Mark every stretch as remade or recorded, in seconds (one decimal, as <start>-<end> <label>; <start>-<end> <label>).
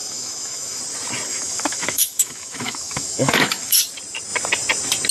0.0-0.8 remade; 0.8-1.3 recorded; 1.3-3.8 remade; 3.8-5.1 recorded